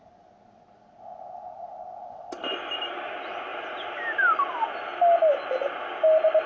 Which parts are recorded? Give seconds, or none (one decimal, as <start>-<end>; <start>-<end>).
0.0-6.5